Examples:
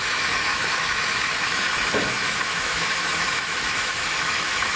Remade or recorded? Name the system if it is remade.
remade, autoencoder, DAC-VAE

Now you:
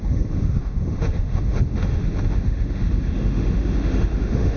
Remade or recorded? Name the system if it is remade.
remade, autoencoder, DAC-VAE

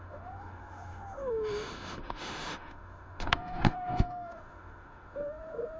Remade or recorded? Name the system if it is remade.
remade, autoencoder, DAC-VAE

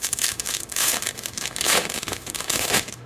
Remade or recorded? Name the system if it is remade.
remade, autoencoder, DAC-VAE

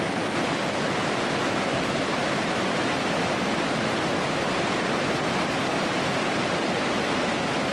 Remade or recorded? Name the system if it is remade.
recorded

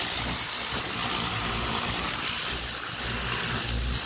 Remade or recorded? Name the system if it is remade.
recorded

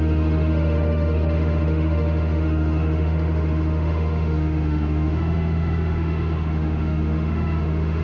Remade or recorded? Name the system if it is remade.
remade, autoencoder, DAC-VAE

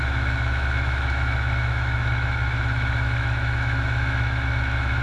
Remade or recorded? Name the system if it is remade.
remade, autoencoder, DAC-VAE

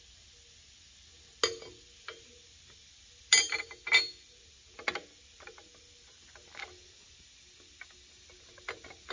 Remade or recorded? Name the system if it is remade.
recorded